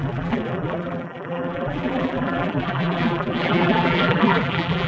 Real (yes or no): no